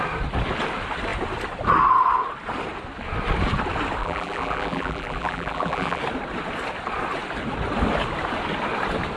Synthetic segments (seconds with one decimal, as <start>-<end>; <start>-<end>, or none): 4.0-6.0